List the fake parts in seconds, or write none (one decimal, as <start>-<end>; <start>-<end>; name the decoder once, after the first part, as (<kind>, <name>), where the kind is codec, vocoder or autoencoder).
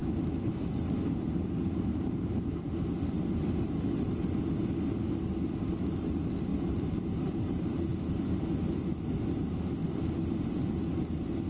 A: 1.9-2.6 (vocoder, BigVGAN v2); 6.5-7.7